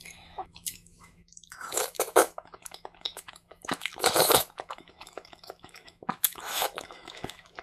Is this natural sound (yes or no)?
no